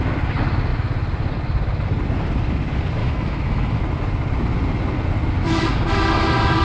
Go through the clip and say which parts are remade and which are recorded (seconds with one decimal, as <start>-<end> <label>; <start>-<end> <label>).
0.0-3.0 recorded; 3.0-3.8 remade; 3.8-6.6 recorded